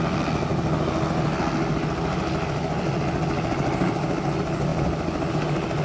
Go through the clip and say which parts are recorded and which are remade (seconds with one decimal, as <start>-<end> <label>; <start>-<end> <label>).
0.0-5.8 recorded